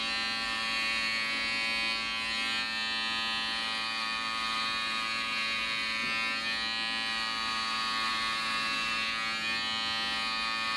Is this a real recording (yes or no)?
yes